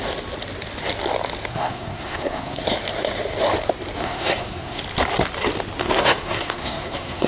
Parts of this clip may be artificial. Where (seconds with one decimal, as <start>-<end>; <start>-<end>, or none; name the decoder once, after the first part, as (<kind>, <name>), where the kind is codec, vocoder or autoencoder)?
1.5-2.6 (codec, SNAC); 4.0-4.8; 5.8-7.3